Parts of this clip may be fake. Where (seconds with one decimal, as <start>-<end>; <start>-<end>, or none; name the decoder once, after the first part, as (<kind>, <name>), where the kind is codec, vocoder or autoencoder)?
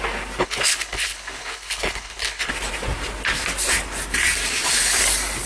0.4-2.5 (codec, HILCodec)